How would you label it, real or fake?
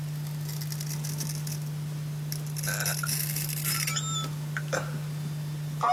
real